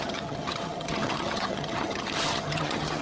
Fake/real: fake